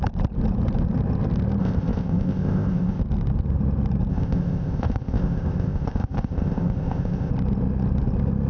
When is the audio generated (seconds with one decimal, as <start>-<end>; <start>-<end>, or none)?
1.6-3.0; 4.1-7.3